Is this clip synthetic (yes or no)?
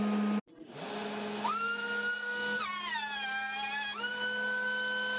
no